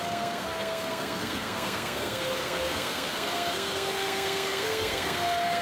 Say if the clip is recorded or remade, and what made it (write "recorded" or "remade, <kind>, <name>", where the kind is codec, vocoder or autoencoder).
remade, codec, SNAC